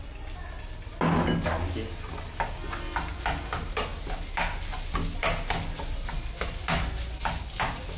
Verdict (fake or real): real